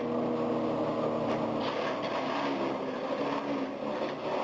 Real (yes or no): yes